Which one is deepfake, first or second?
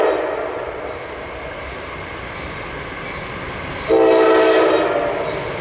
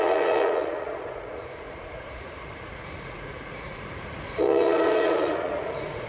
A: second